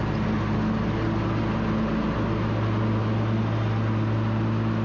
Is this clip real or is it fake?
real